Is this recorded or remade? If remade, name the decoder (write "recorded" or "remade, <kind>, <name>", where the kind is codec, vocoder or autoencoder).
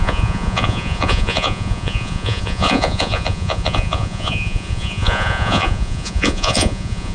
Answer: remade, vocoder, Vocos